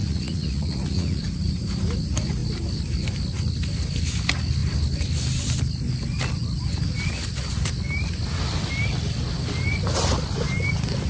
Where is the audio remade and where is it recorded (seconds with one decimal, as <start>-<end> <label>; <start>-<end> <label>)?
0.0-1.2 remade; 1.2-11.1 recorded